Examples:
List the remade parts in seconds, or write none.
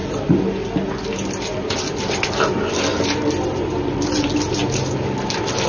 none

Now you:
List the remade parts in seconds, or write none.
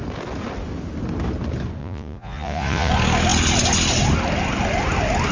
1.8-2.9 (vocoder, Vocos)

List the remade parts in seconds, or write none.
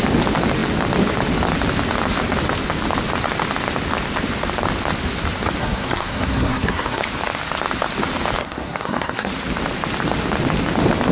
5.6-7.0 (codec, SNAC); 8.4-9.3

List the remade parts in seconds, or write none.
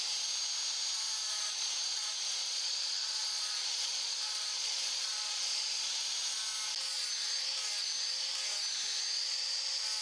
1.2-6.0 (vocoder, Vocos)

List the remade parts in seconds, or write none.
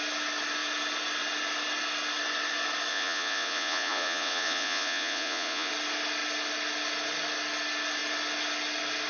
2.9-5.7 (vocoder, Vocos)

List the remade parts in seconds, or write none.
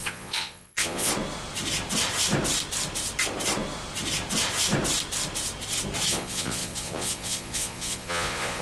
0.0-1.1 (vocoder, Vocos); 6.1-8.6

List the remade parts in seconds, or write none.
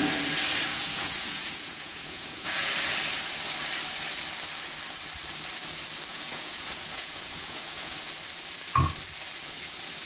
0.7-2.7 (vocoder, Vocos); 6.1-8.1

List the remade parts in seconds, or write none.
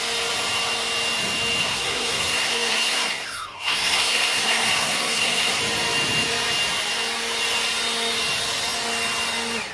1.6-5.6 (codec, SNAC)